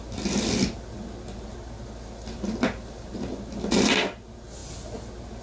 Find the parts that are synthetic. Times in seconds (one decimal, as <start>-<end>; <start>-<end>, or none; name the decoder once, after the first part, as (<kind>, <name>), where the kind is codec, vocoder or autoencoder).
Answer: none